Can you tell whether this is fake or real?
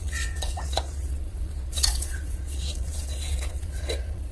fake